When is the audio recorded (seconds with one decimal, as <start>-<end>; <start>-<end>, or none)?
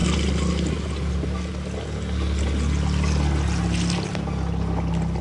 0.0-5.2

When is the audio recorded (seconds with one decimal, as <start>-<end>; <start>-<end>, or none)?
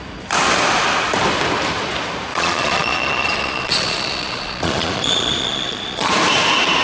0.0-2.3; 6.1-6.8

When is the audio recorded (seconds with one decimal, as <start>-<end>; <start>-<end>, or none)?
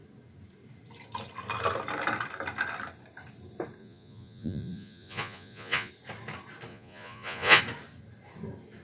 0.0-3.8; 5.9-6.7; 7.6-8.8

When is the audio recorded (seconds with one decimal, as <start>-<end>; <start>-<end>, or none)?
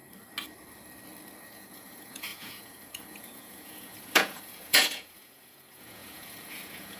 0.0-1.4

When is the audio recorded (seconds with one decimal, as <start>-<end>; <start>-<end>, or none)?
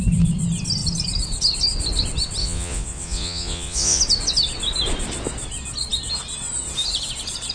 0.0-2.4; 4.0-7.5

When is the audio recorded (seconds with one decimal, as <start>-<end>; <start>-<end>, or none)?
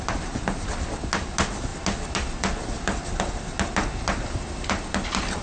0.0-5.4